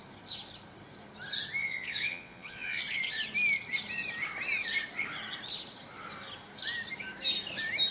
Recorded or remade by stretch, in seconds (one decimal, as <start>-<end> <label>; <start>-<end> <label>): 0.0-1.6 recorded; 1.6-2.8 remade; 2.8-7.9 recorded